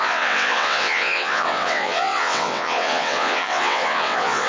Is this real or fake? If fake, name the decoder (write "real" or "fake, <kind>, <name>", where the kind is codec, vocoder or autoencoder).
fake, vocoder, WaveNeXt